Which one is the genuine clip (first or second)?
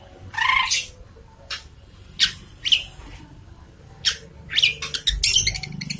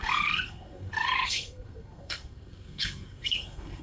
first